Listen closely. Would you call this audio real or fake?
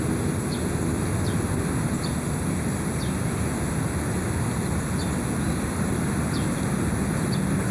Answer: real